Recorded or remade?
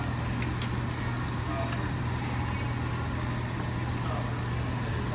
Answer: recorded